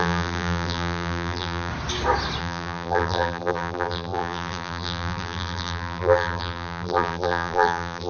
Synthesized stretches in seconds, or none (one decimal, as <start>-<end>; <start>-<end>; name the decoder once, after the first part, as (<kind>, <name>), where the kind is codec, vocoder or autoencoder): 0.0-1.7 (vocoder, BigVGAN v2); 2.4-8.1